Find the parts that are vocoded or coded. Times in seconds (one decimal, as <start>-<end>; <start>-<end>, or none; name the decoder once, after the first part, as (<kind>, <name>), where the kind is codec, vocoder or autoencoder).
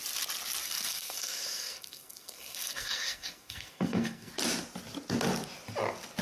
0.6-4.3 (codec, SNAC)